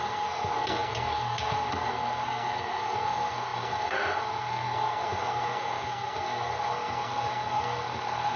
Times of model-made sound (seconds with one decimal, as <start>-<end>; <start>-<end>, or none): 0.0-8.4